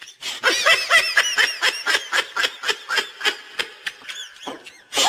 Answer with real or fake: real